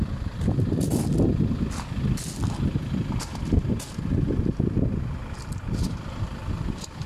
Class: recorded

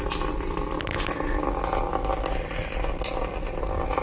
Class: recorded